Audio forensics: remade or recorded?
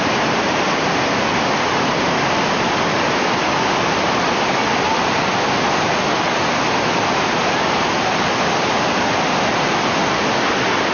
recorded